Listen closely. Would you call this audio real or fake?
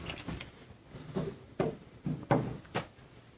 real